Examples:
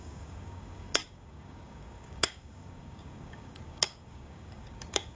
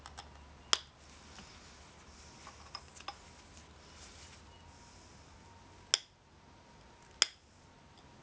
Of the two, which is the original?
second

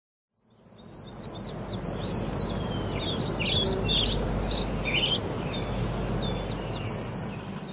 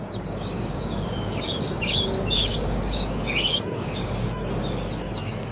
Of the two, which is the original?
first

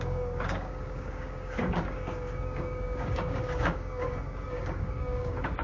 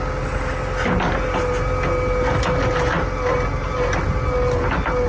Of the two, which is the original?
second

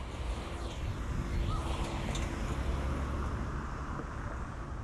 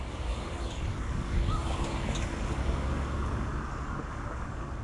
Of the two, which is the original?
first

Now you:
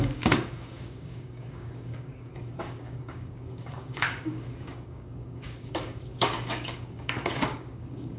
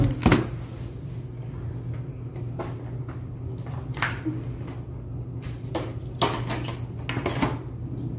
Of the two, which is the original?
second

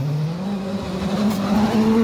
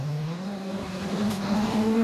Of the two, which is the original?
first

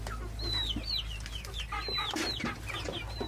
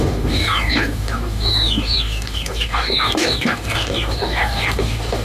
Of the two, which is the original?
first